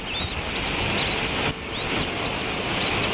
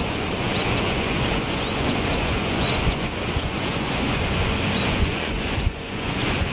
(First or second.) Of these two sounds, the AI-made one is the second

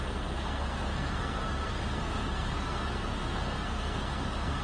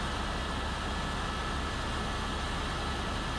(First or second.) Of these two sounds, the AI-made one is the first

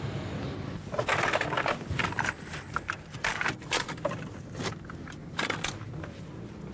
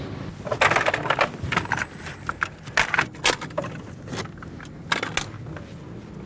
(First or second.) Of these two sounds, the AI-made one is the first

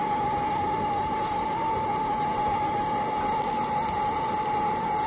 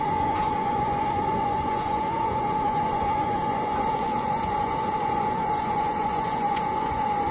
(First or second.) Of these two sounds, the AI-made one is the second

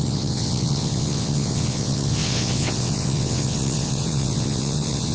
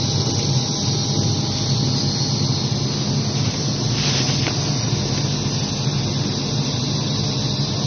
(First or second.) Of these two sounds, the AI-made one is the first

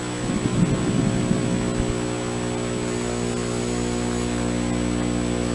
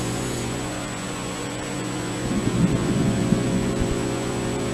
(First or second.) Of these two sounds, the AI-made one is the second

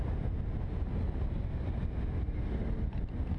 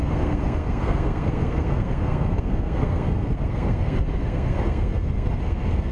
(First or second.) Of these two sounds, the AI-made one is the second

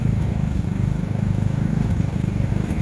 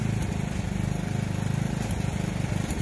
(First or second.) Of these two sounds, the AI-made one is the first